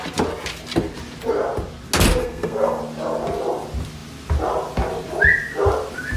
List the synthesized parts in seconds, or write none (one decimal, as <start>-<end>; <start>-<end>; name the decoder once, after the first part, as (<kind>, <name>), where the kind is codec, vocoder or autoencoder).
2.2-2.8 (codec, SNAC)